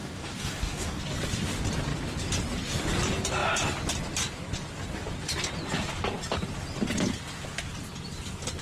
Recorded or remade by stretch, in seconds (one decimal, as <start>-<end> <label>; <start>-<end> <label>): 0.0-1.0 remade; 1.0-8.6 recorded